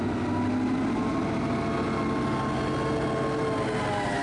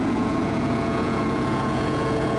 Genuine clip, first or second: first